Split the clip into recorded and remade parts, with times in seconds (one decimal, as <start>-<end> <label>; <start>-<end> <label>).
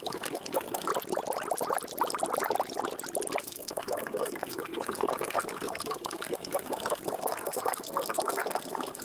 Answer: 0.0-0.9 remade; 0.9-3.4 recorded; 3.4-9.0 remade